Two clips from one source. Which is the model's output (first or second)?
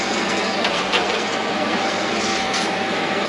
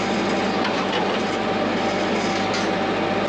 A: first